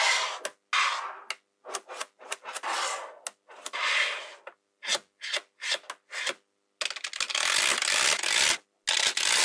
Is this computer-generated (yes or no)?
no